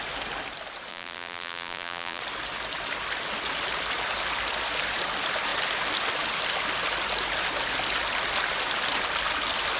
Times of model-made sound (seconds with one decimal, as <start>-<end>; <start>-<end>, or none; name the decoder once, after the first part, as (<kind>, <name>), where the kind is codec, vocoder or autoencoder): 0.9-2.2 (vocoder, BigVGAN v2)